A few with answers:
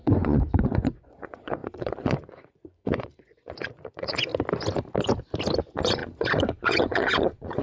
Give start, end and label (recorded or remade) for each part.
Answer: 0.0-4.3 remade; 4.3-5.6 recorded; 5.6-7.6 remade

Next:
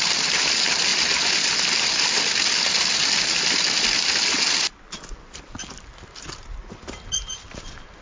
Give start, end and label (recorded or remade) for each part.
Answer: 0.0-8.0 recorded

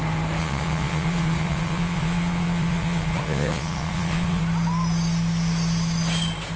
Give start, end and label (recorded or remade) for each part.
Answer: 0.0-0.4 recorded; 0.4-4.4 remade; 4.4-6.6 recorded

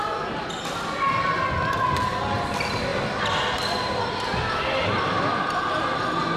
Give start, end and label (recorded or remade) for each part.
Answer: 0.0-6.4 recorded